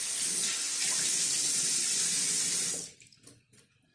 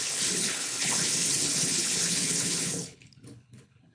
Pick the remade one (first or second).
second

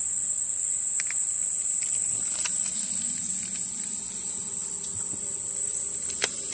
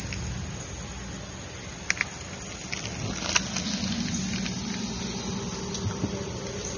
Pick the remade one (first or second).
first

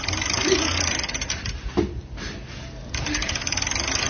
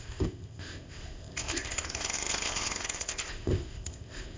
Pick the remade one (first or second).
second